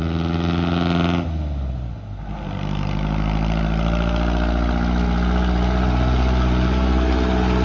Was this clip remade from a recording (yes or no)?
no